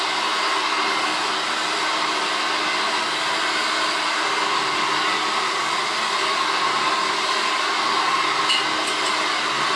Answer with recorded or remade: recorded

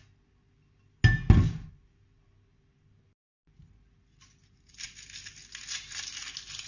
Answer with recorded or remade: recorded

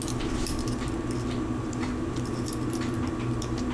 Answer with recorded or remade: recorded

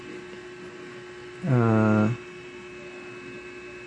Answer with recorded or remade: recorded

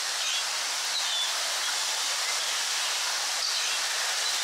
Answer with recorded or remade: recorded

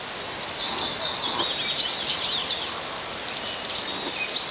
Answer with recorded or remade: recorded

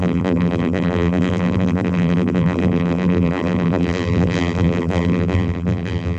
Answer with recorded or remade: remade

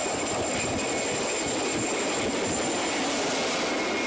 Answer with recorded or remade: recorded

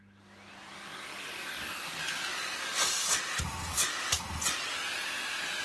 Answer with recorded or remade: recorded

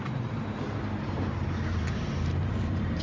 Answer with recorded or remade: remade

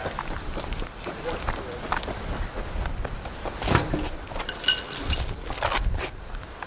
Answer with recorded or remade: remade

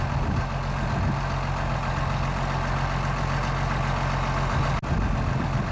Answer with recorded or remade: recorded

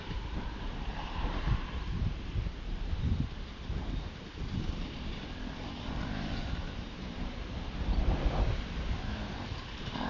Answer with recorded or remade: remade